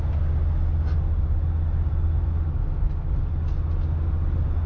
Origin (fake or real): real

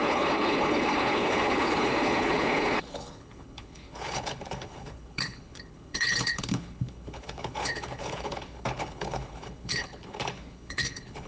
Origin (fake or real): fake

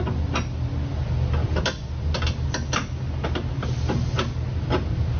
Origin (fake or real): real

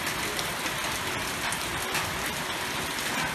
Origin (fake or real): real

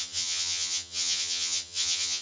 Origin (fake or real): fake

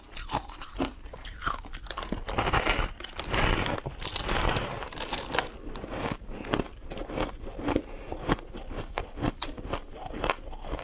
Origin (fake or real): real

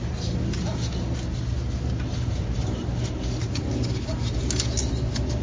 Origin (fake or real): real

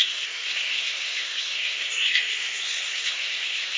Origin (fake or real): fake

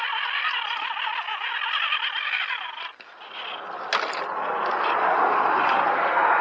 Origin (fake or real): real